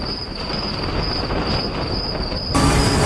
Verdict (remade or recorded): recorded